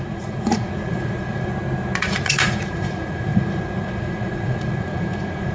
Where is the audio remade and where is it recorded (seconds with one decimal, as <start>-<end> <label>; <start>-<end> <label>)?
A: 0.0-1.5 remade; 1.5-2.0 recorded; 2.0-5.5 remade